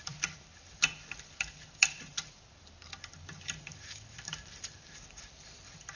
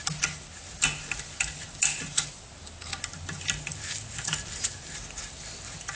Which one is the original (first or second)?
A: second